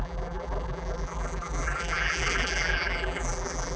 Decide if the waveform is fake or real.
fake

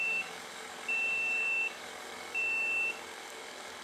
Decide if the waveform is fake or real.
fake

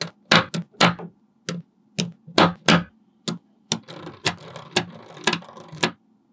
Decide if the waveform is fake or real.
real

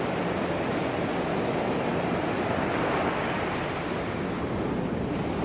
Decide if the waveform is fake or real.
real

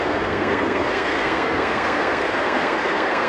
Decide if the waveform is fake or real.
fake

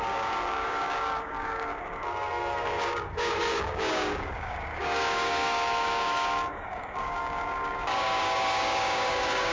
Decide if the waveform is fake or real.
fake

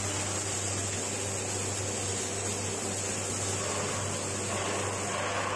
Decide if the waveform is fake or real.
real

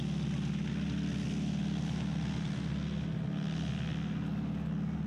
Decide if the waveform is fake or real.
real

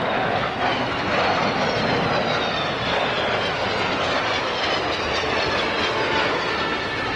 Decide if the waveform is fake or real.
real